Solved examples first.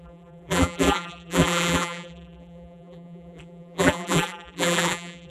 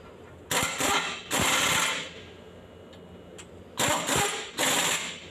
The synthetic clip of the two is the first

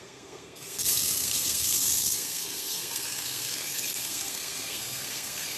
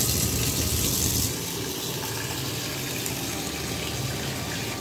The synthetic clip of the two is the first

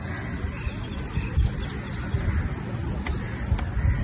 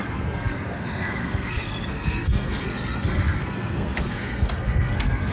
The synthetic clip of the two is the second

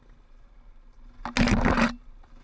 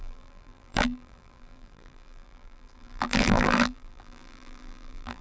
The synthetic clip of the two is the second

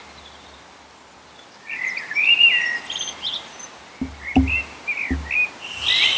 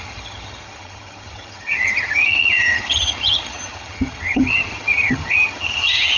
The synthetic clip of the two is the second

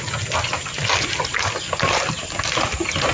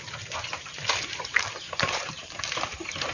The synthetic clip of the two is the second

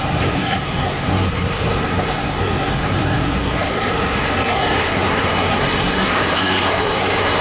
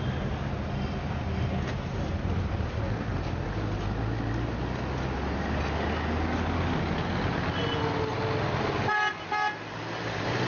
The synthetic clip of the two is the first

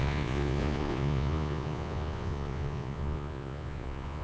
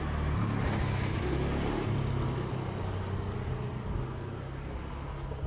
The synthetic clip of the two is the first